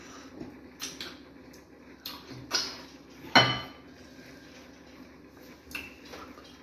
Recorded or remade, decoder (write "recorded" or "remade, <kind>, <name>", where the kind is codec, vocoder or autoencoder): recorded